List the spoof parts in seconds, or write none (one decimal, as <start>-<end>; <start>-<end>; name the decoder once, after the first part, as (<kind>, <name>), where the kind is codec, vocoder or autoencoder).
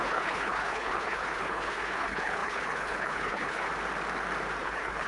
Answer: 0.0-3.7 (codec, HILCodec); 4.6-5.1